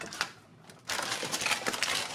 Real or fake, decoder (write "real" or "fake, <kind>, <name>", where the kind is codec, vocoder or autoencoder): real